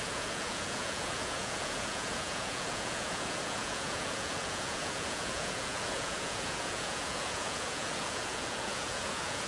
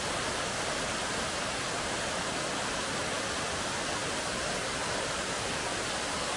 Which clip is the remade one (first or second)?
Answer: first